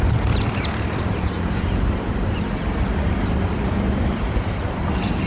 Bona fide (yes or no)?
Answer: yes